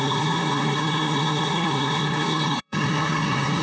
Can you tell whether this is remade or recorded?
remade